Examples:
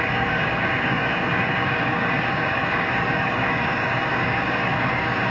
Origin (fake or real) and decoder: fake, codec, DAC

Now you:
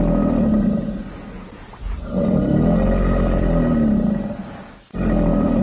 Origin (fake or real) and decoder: real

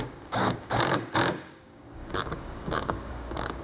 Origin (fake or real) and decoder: fake, codec, DAC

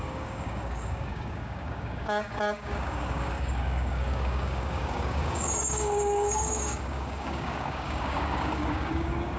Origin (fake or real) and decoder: fake, codec, DAC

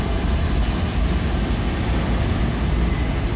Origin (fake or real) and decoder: real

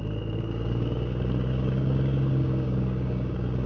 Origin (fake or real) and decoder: fake, codec, DAC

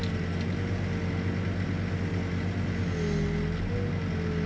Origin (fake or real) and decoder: real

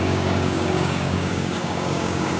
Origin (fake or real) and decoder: fake, codec, DAC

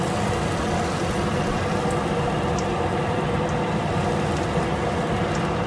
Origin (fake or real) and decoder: real